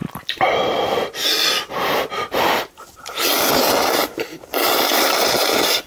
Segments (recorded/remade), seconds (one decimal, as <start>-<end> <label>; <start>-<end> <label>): 0.0-4.0 recorded; 4.0-4.8 remade; 4.8-5.9 recorded